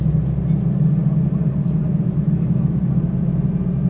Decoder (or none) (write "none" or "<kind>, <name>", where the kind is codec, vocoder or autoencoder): none